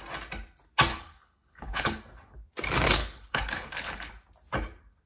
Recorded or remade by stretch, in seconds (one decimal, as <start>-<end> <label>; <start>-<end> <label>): 0.0-0.9 recorded; 0.9-2.0 remade; 2.0-3.0 recorded; 3.0-4.1 remade; 4.1-5.1 recorded